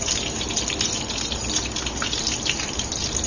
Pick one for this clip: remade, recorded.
recorded